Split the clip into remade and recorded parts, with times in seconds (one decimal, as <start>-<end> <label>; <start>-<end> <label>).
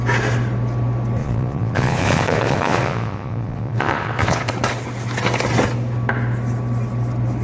0.0-1.2 recorded; 1.2-4.5 remade; 4.5-7.4 recorded